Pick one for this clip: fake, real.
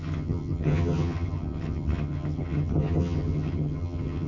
fake